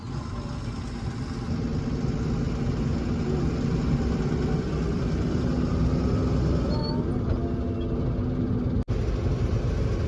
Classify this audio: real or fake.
real